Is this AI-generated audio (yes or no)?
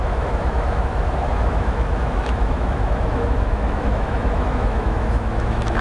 yes